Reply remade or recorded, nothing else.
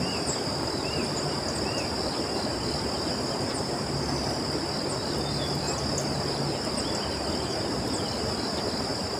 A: recorded